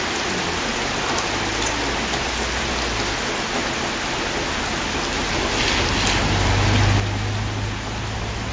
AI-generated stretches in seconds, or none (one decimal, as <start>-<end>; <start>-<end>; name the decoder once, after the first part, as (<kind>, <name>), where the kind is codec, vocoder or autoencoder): none